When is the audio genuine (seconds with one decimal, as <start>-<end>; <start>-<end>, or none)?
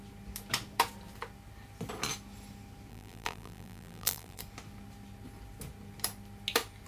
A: 0.0-2.9; 4.4-6.9